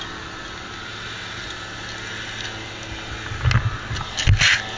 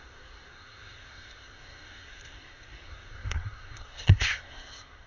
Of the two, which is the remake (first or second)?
second